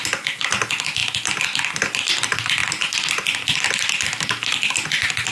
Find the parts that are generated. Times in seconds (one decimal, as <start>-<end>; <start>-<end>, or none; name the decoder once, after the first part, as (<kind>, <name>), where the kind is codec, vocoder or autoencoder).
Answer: none